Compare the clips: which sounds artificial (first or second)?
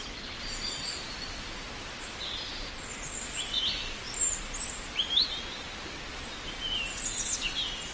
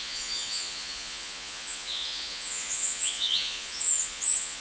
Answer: second